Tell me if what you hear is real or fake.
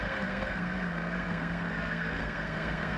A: fake